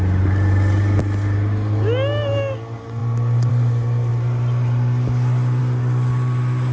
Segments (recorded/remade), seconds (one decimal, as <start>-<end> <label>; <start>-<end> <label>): 0.0-6.7 recorded